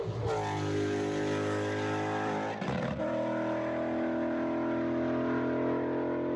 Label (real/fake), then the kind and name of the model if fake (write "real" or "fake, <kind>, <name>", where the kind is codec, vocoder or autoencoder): real